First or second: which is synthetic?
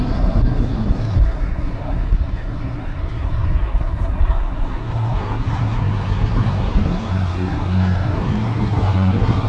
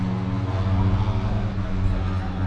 first